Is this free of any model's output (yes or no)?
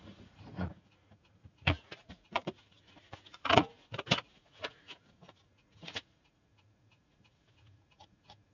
no